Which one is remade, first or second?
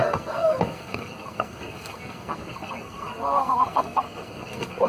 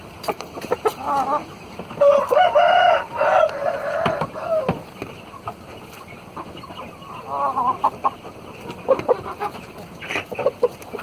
first